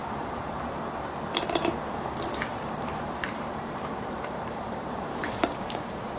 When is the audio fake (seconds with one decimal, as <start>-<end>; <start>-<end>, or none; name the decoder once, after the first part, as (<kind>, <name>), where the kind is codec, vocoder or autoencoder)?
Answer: 0.0-1.4 (vocoder, BigVGAN v2); 2.5-6.2